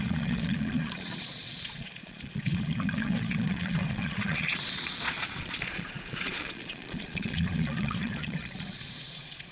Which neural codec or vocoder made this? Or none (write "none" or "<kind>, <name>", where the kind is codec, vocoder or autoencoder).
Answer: vocoder, Vocos